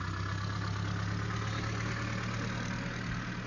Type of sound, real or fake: real